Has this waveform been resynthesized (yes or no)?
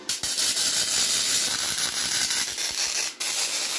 no